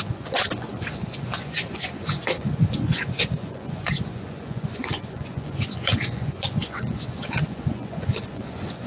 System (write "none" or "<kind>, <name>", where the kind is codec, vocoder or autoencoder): vocoder, Vocos